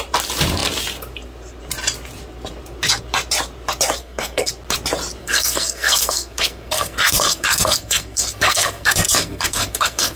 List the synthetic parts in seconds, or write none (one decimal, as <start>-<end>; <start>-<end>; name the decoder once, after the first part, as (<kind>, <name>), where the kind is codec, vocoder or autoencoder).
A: 4.0-4.5 (codec, SNAC); 5.2-10.2